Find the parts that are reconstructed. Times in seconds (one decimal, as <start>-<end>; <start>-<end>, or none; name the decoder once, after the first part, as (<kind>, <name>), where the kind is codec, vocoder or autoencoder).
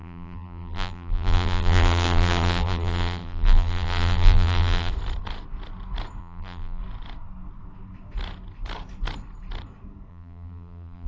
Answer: 0.0-4.9 (vocoder, BigVGAN v2); 6.2-6.8; 10.1-11.1